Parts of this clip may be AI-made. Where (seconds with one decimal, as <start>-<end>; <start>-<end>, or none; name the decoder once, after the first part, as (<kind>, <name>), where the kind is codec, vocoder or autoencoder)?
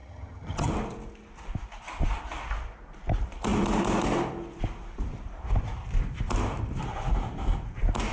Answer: 0.0-0.7 (vocoder, HiFi-GAN)